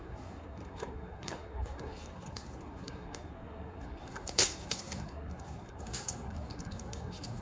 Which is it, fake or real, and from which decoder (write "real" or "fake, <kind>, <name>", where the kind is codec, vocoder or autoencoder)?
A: fake, codec, SNAC